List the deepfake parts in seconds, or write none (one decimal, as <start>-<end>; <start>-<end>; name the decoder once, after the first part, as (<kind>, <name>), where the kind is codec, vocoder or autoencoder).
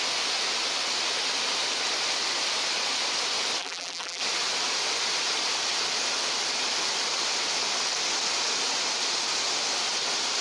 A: 3.6-4.2 (vocoder, BigVGAN v2)